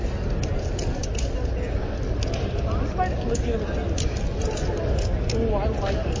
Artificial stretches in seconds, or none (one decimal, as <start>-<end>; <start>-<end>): none